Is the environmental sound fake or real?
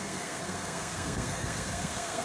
fake